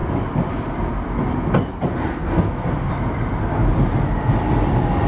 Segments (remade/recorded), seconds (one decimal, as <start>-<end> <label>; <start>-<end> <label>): 0.0-2.1 recorded; 2.1-2.9 remade; 2.9-5.1 recorded